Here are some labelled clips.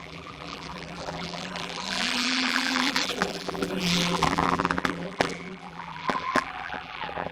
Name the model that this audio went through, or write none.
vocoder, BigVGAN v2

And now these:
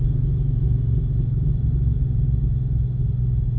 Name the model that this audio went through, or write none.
none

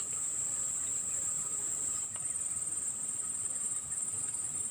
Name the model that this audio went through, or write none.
vocoder, BigVGAN v2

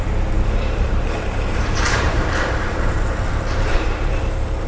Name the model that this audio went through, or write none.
vocoder, BigVGAN v2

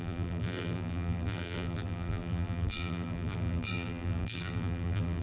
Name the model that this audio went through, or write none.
vocoder, BigVGAN v2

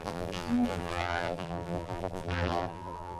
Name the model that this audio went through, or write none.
vocoder, BigVGAN v2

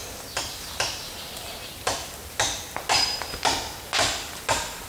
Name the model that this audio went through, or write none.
none